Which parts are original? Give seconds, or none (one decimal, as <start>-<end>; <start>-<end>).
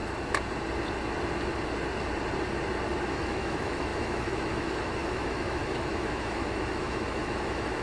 0.0-3.1